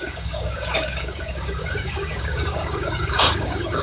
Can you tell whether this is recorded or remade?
remade